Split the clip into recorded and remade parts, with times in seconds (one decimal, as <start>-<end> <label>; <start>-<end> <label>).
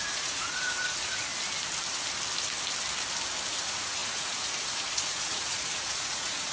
0.0-1.3 remade; 1.3-3.5 recorded; 3.5-6.5 remade